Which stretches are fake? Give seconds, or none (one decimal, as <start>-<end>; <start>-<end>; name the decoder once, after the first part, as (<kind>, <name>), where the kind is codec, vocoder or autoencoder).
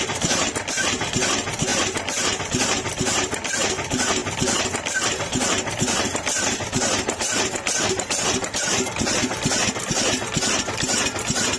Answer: 0.0-11.6 (vocoder, BigVGAN v2)